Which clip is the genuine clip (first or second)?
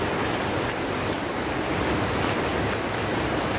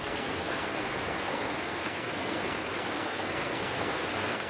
first